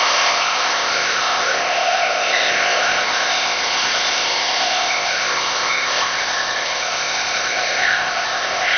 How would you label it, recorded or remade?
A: remade